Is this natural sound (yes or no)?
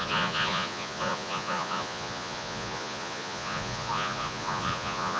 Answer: no